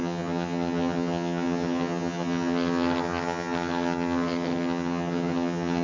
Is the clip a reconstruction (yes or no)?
yes